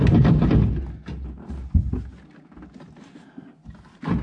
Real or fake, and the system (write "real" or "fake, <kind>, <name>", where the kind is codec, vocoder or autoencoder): real